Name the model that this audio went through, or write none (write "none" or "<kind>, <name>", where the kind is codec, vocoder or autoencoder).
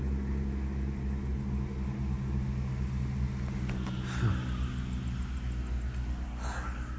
none